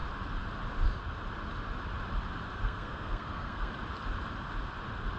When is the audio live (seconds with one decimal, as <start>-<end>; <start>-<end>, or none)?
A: 0.0-2.5; 3.7-5.2